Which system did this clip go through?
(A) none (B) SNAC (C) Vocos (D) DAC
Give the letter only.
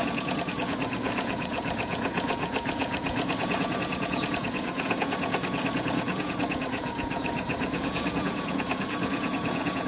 C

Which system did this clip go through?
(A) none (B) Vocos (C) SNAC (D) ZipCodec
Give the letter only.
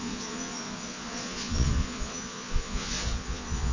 B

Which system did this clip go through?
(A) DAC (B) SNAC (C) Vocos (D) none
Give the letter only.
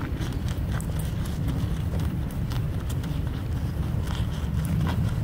D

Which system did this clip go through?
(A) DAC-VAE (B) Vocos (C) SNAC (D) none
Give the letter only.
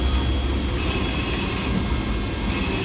D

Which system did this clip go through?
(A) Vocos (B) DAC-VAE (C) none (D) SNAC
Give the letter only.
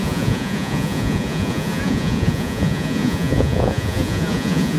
A